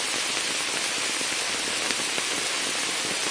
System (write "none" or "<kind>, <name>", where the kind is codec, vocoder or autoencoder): none